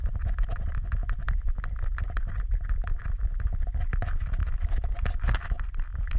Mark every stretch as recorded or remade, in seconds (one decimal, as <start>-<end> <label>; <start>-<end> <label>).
0.0-6.2 recorded